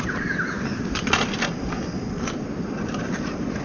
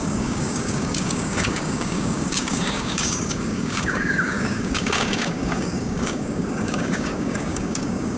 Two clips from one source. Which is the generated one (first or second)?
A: second